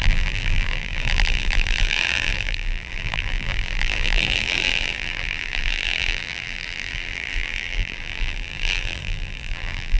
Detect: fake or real fake